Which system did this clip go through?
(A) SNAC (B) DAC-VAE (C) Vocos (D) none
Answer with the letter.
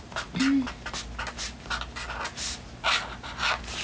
D